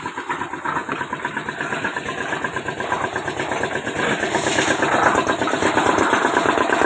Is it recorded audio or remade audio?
recorded